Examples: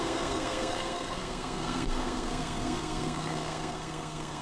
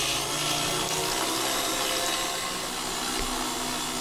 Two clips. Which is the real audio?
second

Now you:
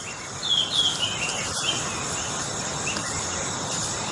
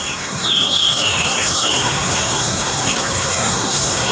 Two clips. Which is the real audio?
first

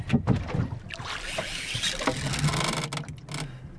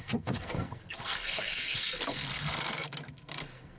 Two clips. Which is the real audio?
first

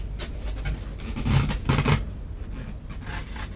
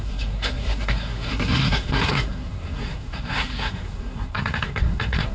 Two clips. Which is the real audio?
first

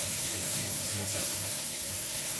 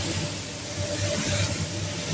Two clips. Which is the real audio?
second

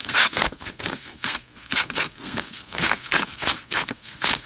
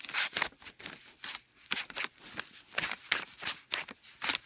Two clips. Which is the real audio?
second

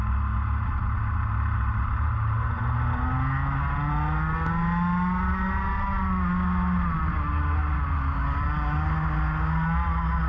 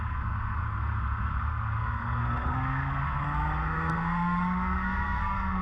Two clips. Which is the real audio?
first